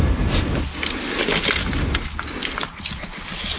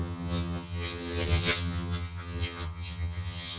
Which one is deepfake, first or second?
second